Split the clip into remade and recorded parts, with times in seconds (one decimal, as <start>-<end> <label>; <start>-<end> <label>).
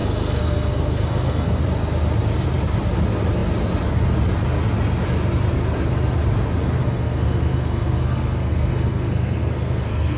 0.0-1.6 remade; 1.6-6.8 recorded; 6.8-10.2 remade